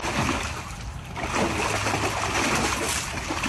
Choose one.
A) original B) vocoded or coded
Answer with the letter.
A